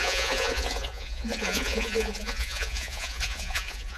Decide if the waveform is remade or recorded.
remade